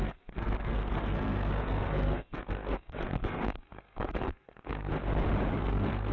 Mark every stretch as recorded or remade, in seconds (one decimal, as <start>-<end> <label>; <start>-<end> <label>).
0.0-4.9 remade; 4.9-5.5 recorded; 5.5-6.1 remade